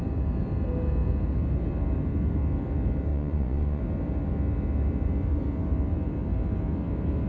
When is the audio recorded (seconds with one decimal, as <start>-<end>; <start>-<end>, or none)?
0.0-3.1; 3.8-7.3